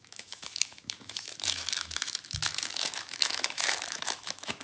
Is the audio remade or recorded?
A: remade